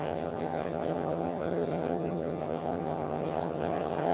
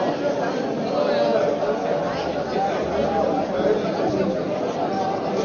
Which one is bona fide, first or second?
second